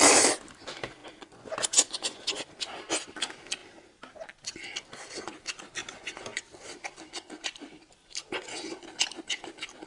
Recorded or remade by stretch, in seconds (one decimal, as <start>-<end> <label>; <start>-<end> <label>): 0.0-1.0 recorded; 1.0-2.4 remade; 2.4-5.8 recorded; 5.8-6.4 remade; 6.4-9.9 recorded